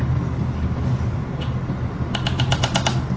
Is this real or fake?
real